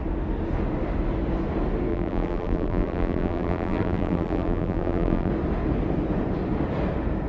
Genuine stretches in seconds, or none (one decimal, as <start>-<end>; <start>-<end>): 0.0-1.9; 5.3-7.3